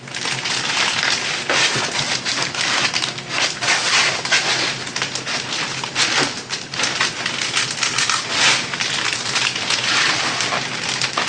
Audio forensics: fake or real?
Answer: real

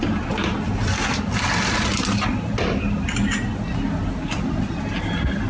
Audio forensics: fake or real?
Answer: real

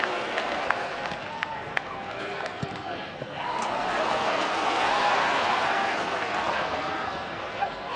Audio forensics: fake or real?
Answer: fake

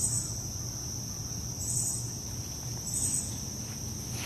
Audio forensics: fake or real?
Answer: real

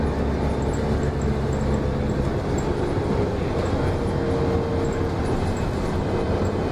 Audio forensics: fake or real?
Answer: real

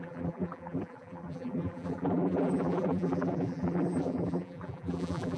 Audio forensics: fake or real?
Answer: fake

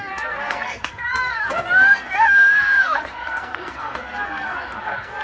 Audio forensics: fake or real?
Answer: fake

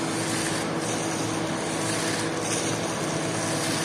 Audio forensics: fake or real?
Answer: real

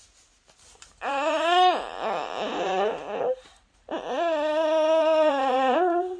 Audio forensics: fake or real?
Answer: fake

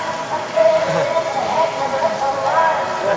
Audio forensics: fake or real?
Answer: real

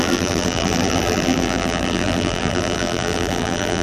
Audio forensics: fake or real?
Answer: fake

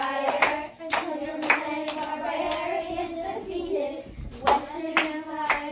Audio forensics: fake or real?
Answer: real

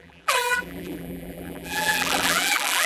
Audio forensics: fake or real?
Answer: fake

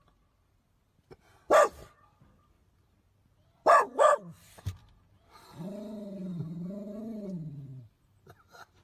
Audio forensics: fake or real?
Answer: real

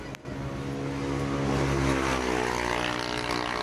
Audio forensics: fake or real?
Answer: real